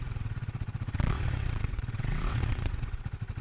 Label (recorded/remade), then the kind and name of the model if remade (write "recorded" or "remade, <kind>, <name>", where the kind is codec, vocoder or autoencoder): remade, vocoder, WaveNeXt